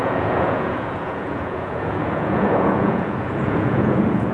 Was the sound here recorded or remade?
remade